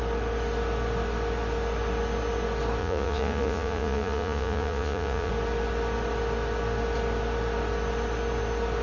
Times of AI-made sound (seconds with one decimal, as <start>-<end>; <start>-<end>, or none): 2.8-5.3